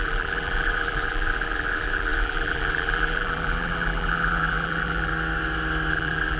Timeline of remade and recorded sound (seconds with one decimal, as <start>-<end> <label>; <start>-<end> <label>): 0.0-5.1 remade; 5.1-5.9 recorded; 5.9-6.4 remade